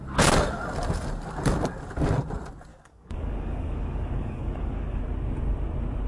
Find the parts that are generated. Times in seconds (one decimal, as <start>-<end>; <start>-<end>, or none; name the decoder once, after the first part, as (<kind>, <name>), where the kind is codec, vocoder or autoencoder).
2.7-5.0 (codec, DAC)